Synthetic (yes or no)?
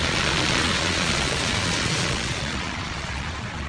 yes